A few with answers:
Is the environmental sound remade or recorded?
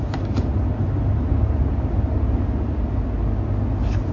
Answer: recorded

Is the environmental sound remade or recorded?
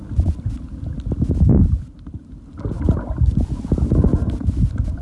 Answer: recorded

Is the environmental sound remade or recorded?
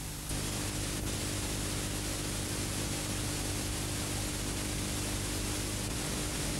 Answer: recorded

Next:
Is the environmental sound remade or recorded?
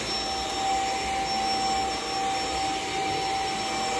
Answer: recorded